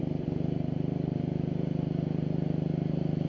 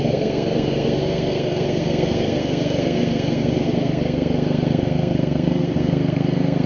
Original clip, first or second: first